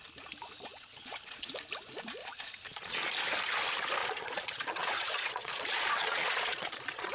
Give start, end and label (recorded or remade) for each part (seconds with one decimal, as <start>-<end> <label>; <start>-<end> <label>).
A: 0.0-0.7 recorded; 0.7-1.5 remade; 1.5-2.2 recorded; 2.2-3.1 remade; 3.1-4.0 recorded; 4.0-7.1 remade